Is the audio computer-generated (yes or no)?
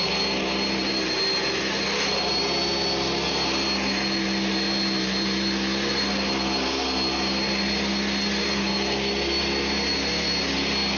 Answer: no